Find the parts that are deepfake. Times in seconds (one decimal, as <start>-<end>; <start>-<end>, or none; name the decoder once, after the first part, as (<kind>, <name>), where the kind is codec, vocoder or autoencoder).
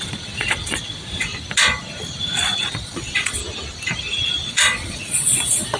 0.0-1.3 (vocoder, Vocos); 2.6-3.4; 4.5-5.8